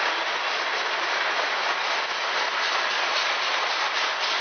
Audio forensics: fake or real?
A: real